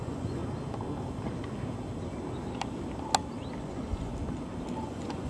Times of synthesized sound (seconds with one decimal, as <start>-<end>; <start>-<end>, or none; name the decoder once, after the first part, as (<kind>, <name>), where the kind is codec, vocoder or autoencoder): 0.0-0.4 (vocoder, Vocos); 3.6-4.1; 4.8-5.3